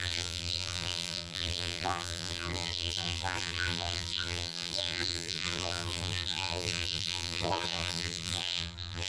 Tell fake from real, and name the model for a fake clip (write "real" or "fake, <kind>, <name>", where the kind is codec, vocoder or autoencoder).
fake, vocoder, BigVGAN v2